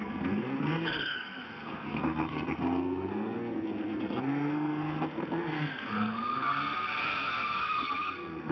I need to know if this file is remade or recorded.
remade